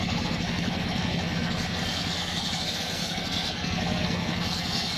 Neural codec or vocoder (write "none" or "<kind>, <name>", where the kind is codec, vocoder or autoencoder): codec, SNAC